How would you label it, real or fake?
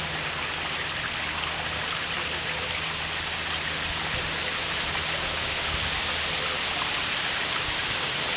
real